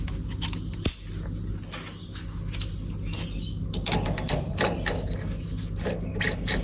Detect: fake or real real